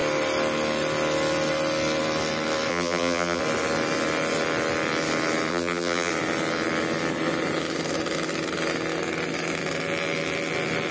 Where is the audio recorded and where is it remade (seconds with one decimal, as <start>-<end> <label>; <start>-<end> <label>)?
0.0-2.7 recorded; 2.7-3.4 remade; 3.4-5.5 recorded; 5.5-6.1 remade; 6.1-10.9 recorded